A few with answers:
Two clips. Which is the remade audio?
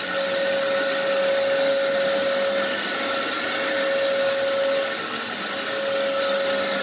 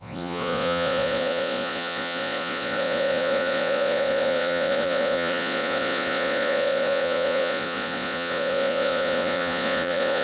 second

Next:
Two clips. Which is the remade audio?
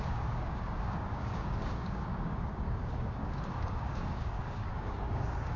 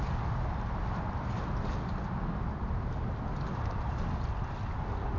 first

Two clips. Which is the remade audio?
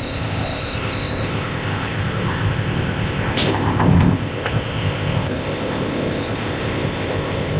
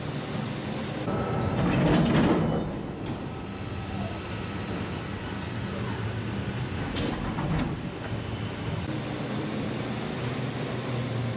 first